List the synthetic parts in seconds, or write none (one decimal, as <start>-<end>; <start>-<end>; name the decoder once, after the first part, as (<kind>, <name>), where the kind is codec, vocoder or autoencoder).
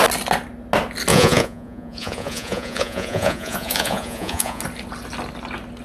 1.1-4.6 (vocoder, Vocos)